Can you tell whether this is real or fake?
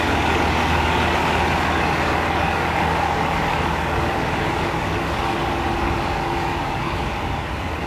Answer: fake